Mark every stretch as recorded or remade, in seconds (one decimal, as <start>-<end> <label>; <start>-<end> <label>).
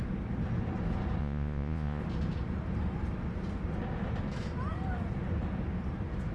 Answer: 0.0-1.2 recorded; 1.2-2.0 remade; 2.0-6.3 recorded